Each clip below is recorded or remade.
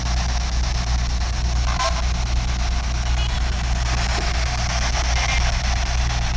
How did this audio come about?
recorded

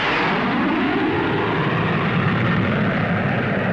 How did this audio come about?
recorded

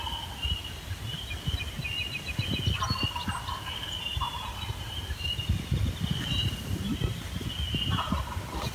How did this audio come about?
recorded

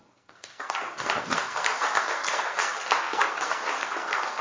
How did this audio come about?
remade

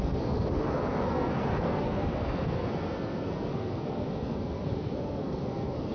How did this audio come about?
remade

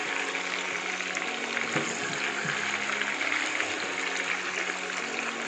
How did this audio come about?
recorded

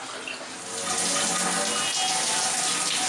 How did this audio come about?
recorded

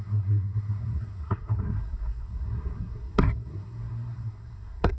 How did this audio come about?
remade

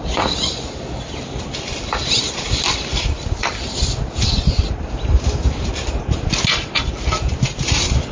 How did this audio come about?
recorded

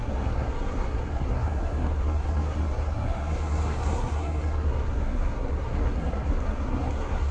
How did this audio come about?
remade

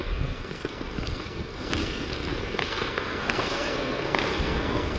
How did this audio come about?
remade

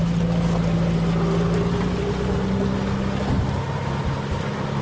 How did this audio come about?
recorded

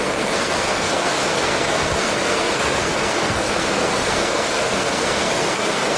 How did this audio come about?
remade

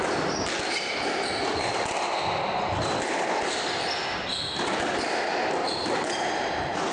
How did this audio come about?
recorded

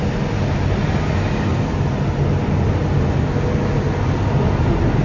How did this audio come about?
recorded